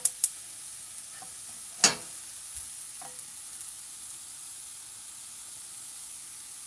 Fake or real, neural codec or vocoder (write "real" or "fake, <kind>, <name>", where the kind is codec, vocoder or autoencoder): real